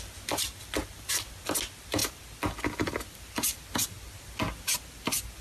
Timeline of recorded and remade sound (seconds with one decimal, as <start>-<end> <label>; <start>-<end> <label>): 0.0-5.4 recorded